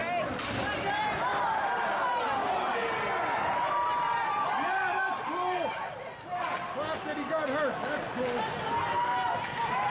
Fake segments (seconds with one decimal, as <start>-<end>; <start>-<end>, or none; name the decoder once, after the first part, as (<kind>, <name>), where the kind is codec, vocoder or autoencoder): none